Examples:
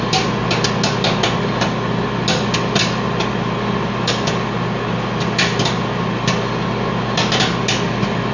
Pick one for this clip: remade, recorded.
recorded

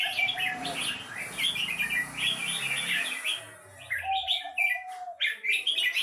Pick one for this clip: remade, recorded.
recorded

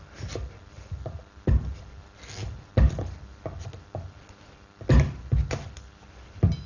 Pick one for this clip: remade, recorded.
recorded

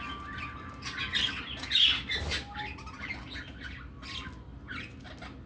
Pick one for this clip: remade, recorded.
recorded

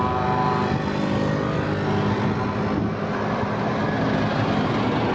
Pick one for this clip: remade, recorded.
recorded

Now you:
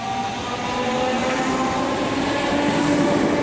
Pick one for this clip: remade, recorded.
recorded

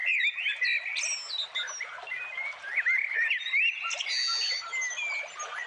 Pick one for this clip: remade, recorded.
recorded